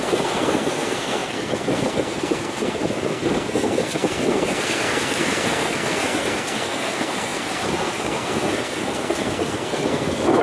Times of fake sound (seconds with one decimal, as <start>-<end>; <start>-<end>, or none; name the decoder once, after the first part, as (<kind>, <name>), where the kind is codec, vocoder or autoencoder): 0.0-10.4 (codec, SNAC)